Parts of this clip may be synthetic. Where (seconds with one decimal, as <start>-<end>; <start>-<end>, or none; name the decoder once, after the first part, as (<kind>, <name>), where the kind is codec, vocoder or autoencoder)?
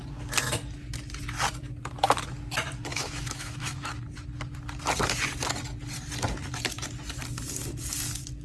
2.9-3.9 (autoencoder, DAC-VAE)